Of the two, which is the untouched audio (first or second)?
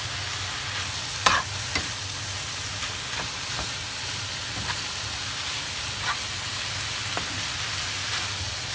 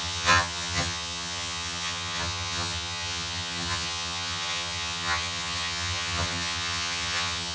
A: first